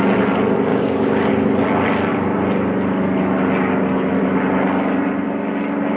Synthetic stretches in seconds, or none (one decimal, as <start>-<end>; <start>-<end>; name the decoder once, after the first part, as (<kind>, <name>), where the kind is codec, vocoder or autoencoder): 0.7-1.3 (codec, DAC)